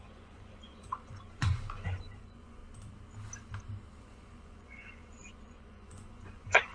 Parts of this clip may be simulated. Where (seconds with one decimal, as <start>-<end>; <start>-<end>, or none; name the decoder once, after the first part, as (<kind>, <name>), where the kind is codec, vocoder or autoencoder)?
0.0-2.6 (vocoder, Vocos); 4.0-6.7